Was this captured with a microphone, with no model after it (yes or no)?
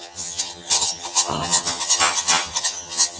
no